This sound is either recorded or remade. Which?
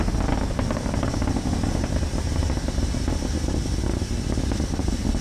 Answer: recorded